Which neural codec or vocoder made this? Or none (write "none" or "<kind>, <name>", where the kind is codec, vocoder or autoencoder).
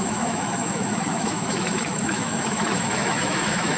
autoencoder, DAC-VAE